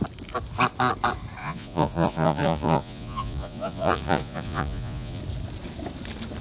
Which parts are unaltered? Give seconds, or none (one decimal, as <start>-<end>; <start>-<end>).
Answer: 0.0-1.4; 5.2-6.4